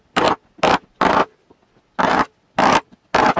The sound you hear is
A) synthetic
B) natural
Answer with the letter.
B